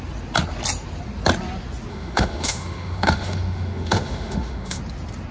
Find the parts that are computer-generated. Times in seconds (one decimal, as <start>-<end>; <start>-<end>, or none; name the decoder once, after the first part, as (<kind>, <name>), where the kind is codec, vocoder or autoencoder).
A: 1.9-4.8 (autoencoder, DAC-VAE)